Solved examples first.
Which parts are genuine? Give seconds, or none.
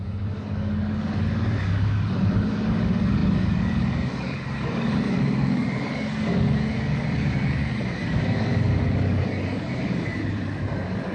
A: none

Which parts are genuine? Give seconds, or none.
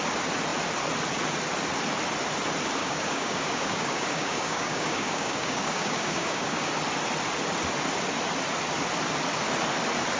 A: 0.0-2.8; 6.7-10.2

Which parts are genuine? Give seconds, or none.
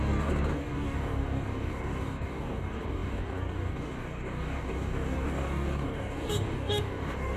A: none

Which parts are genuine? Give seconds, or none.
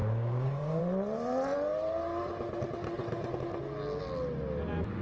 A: 0.8-5.0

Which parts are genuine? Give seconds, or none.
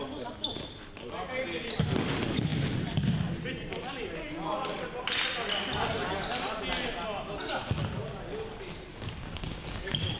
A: 0.0-8.9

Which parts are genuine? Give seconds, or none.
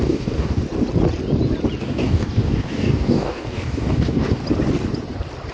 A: 0.6-1.8; 4.4-5.5